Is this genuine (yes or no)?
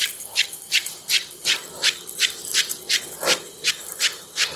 yes